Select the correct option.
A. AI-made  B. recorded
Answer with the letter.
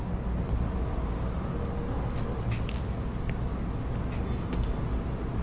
B